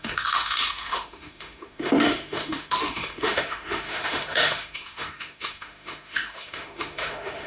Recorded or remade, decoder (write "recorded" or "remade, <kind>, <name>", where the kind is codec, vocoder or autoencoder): remade, autoencoder, DAC-VAE